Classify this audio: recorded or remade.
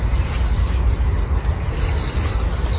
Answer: recorded